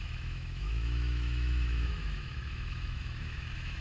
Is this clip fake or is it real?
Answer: fake